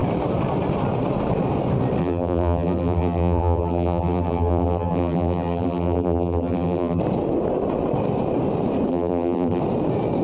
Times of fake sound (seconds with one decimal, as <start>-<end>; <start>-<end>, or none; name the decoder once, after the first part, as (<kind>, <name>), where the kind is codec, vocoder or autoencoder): 2.0-7.0 (vocoder, BigVGAN v2); 8.9-9.6